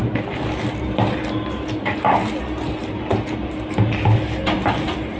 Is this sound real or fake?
real